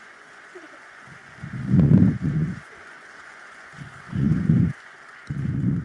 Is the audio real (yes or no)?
no